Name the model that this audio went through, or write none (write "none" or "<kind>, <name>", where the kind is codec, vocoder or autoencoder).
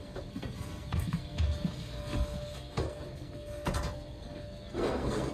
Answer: codec, SNAC